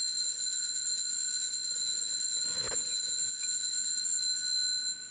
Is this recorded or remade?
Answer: recorded